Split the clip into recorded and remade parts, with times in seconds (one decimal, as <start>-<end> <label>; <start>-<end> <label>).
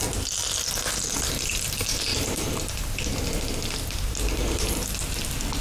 0.0-2.1 recorded; 2.1-4.7 remade; 4.7-5.6 recorded